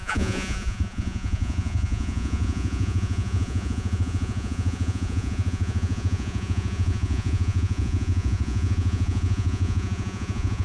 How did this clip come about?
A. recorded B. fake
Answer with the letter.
B